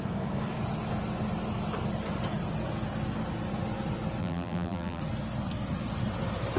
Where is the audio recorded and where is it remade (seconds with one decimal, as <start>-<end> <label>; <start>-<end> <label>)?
0.0-4.2 recorded; 4.2-5.0 remade; 5.0-6.6 recorded